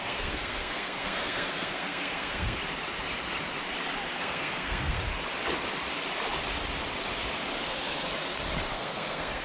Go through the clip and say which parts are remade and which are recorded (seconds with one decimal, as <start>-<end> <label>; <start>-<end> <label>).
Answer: 0.0-2.6 remade; 2.6-4.1 recorded; 4.1-5.0 remade; 5.0-8.7 recorded; 8.7-9.4 remade